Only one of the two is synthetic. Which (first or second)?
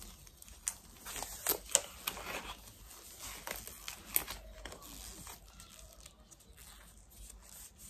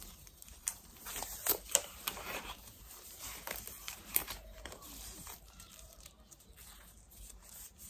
second